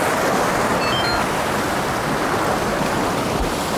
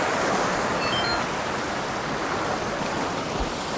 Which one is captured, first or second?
first